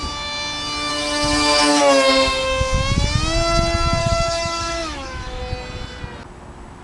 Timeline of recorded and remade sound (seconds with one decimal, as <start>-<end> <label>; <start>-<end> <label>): 0.0-0.9 recorded; 0.9-1.8 remade; 1.8-4.0 recorded; 4.0-5.4 remade; 5.4-6.8 recorded